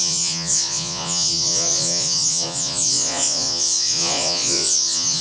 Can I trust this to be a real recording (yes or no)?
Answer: no